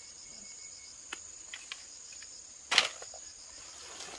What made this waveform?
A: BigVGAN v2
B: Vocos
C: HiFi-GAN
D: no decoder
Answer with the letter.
D